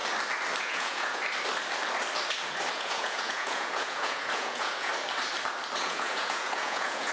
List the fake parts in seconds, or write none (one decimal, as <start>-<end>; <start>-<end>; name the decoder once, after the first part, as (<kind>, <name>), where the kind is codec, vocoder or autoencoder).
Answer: 0.6-1.2 (vocoder, Vocos); 2.7-4.9; 5.8-7.1